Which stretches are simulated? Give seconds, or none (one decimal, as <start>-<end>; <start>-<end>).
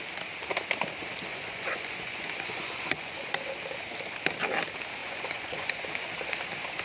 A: 1.3-3.4; 5.0-6.1